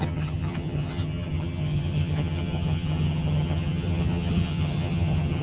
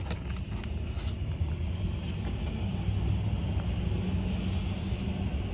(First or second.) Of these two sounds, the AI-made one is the first